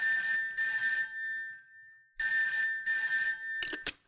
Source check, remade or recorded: recorded